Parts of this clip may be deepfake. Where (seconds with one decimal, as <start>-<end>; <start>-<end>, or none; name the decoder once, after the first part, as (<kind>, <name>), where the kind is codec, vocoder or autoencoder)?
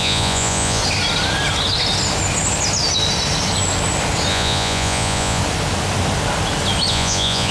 0.0-0.8 (vocoder, Vocos); 4.3-5.4; 6.9-7.5